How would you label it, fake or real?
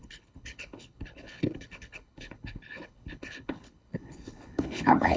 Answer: fake